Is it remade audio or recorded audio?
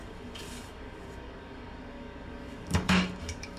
remade